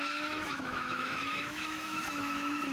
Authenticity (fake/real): fake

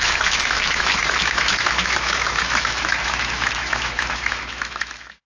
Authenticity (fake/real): fake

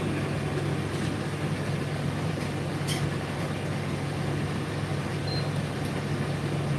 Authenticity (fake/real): real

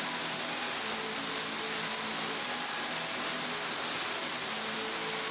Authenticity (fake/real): real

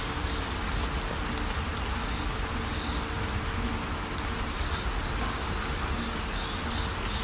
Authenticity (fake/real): real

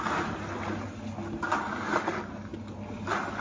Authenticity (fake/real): real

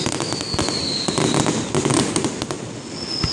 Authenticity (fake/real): real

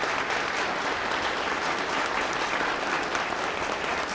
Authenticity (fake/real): real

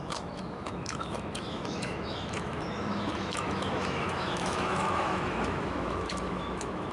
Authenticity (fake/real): fake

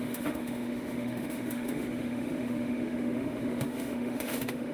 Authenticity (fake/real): fake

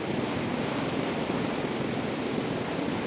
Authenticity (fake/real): real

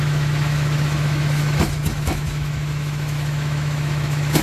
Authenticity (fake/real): fake